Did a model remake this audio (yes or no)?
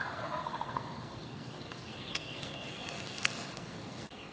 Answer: yes